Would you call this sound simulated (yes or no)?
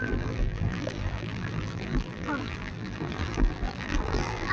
yes